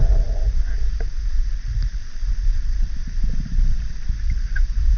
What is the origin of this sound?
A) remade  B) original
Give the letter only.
A